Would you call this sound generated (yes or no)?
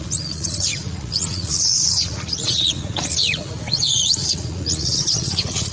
yes